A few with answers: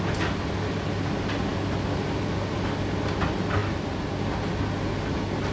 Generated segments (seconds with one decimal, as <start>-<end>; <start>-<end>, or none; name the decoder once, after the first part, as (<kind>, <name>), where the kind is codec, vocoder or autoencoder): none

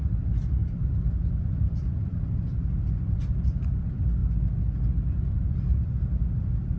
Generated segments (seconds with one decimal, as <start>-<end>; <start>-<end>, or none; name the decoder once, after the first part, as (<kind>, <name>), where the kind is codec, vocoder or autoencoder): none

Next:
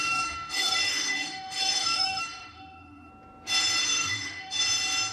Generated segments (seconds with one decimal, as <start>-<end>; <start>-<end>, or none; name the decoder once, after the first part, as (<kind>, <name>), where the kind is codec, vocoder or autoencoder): 0.0-3.1 (autoencoder, DAC-VAE); 3.8-4.6